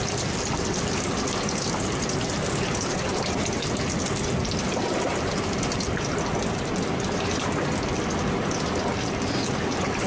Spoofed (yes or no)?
no